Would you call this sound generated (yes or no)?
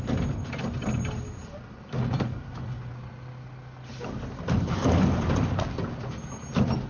no